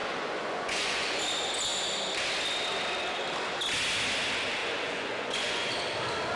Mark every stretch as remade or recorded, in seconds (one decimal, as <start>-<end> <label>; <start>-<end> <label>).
0.0-1.2 remade; 1.2-4.6 recorded; 4.6-5.7 remade; 5.7-6.4 recorded